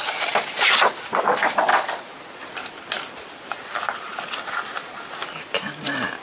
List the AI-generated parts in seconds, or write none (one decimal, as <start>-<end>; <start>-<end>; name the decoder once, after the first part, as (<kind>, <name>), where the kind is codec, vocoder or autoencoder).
none